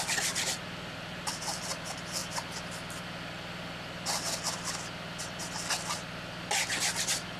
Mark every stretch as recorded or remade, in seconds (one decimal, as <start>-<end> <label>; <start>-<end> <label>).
0.0-7.4 recorded